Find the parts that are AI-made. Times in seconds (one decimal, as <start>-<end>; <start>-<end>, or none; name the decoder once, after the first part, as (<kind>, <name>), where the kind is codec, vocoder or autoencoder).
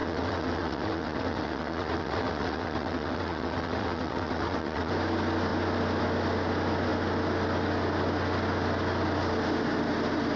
0.0-4.9 (vocoder, WaveNeXt)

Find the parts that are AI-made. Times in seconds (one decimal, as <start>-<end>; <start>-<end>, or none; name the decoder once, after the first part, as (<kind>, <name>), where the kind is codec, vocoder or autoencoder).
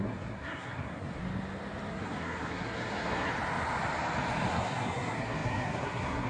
0.0-1.2 (codec, SNAC); 1.9-3.3; 4.5-6.3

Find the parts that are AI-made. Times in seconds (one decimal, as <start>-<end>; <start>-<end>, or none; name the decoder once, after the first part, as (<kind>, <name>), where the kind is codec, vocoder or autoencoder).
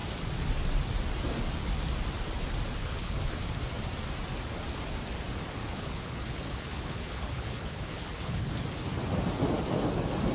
2.8-3.4 (codec, HILCodec); 5.6-8.5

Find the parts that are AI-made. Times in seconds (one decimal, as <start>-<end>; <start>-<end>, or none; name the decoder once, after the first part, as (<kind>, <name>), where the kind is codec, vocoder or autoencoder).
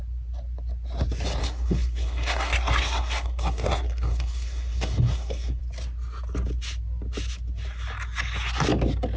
1.4-5.6 (codec, SNAC)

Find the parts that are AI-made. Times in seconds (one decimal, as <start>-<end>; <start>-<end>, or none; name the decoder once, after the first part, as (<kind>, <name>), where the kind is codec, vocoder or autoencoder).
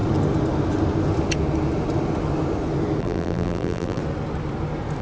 3.0-4.0 (vocoder, BigVGAN v2)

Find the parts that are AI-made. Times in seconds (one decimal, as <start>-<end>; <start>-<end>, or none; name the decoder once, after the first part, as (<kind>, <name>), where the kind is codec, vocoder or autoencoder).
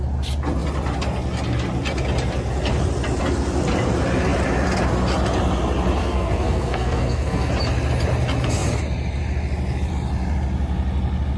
6.0-7.5 (codec, SNAC)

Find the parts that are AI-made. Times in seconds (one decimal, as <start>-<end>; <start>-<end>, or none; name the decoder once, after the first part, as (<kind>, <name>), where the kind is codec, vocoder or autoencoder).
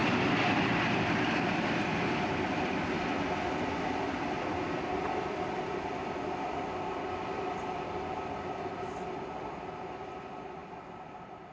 none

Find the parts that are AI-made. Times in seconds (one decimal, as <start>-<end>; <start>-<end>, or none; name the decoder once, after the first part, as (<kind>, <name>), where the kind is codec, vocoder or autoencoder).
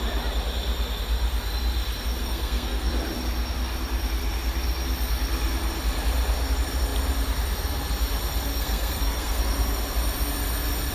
2.2-2.9 (codec, SNAC); 8.5-9.4